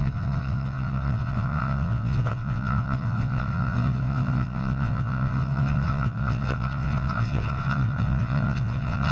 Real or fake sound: fake